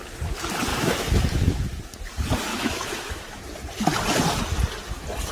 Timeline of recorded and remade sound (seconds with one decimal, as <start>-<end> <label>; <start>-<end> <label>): 0.0-0.7 recorded; 0.7-1.8 remade; 1.8-2.5 recorded; 2.5-3.4 remade; 3.4-5.3 recorded